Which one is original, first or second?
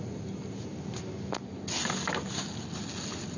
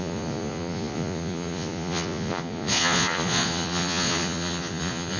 first